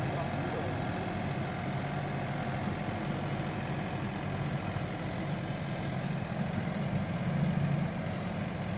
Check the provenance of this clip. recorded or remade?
recorded